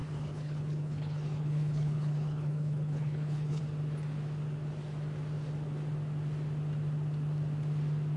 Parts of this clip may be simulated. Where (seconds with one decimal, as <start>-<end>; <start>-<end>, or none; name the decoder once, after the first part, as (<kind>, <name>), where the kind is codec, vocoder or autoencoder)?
0.0-3.6 (codec, HILCodec)